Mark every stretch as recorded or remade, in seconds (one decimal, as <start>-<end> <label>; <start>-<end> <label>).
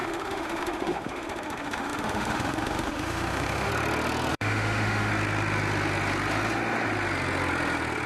0.0-3.7 remade; 3.7-4.3 recorded; 4.3-5.1 remade; 5.1-8.1 recorded